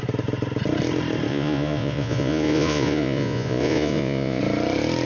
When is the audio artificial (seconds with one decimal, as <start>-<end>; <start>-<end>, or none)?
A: 1.3-4.4